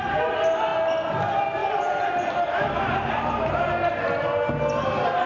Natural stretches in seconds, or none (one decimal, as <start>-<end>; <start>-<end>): 0.0-1.6; 3.7-5.3